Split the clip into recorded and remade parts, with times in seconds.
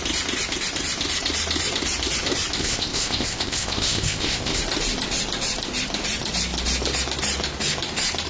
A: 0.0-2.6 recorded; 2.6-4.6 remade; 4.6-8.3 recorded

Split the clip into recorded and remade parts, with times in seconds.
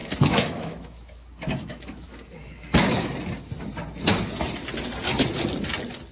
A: 0.0-3.1 remade; 3.1-6.1 recorded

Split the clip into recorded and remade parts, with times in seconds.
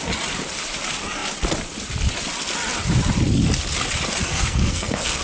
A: 0.0-4.2 recorded; 4.2-5.2 remade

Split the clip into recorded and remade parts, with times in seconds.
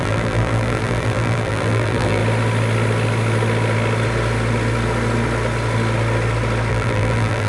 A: 0.0-2.2 remade; 2.2-6.7 recorded; 6.7-7.5 remade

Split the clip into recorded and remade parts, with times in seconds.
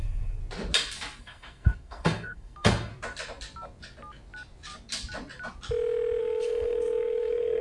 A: 0.0-0.4 remade; 0.4-1.2 recorded; 1.2-2.9 remade; 2.9-6.2 recorded; 6.2-7.6 remade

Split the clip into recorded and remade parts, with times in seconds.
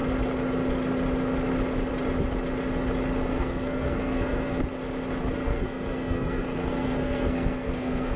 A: 0.0-3.3 recorded; 3.3-4.6 remade; 4.6-5.2 recorded; 5.2-8.2 remade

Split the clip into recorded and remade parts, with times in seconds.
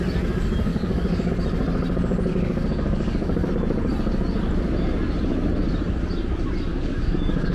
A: 0.0-0.7 recorded; 0.7-1.3 remade; 1.3-2.3 recorded; 2.3-3.5 remade; 3.5-6.7 recorded; 6.7-7.5 remade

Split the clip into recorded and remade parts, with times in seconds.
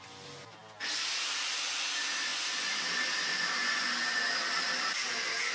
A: 0.0-2.3 recorded; 2.3-2.8 remade; 2.8-3.3 recorded; 3.3-3.9 remade; 3.9-5.5 recorded